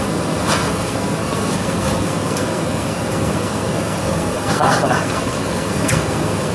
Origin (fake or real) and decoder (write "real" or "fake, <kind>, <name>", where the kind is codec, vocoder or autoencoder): fake, codec, SNAC